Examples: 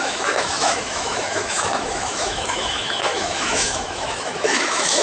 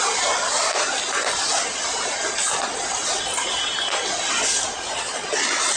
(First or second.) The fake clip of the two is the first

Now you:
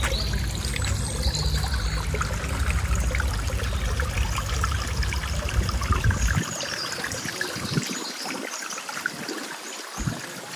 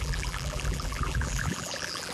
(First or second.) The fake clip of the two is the second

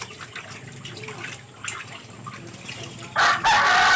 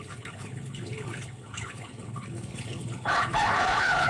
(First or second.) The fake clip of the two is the second